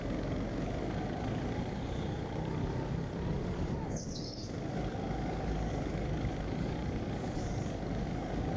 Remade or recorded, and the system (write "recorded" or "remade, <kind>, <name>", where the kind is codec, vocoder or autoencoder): remade, codec, DAC